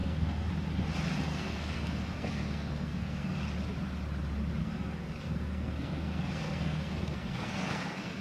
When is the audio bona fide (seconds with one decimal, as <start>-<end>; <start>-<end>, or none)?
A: 0.5-1.3; 3.4-4.6